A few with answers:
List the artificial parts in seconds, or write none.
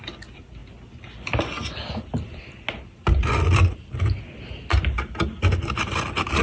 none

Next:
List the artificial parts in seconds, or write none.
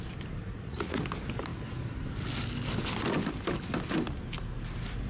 0.4-1.0 (vocoder, Vocos)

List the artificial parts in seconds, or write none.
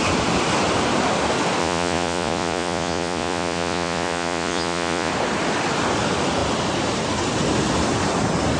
1.6-5.1 (vocoder, Vocos)